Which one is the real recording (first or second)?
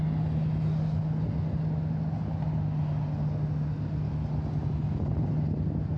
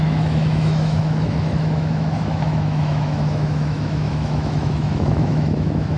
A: first